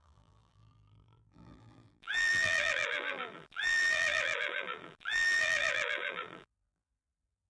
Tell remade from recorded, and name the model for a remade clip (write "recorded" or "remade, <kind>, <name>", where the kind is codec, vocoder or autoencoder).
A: remade, vocoder, BigVGAN v2